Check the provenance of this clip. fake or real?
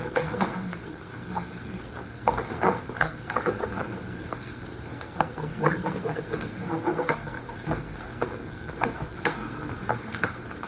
fake